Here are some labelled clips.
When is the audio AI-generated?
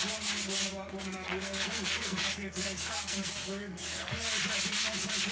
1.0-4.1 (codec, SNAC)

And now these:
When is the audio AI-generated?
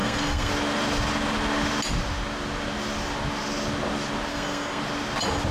0.0-0.5 (codec, SNAC); 4.3-4.8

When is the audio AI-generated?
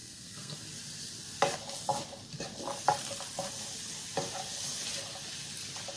0.0-0.6 (codec, SNAC)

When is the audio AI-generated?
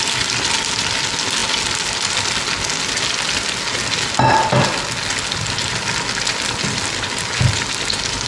none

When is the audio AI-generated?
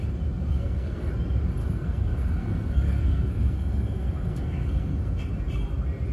0.5-1.1 (codec, SNAC); 1.6-5.3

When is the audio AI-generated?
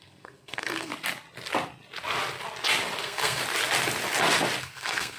0.0-0.9 (codec, SNAC); 3.0-3.4; 4.6-5.2